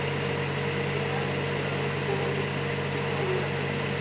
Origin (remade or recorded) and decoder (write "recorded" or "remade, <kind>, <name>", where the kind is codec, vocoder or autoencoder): recorded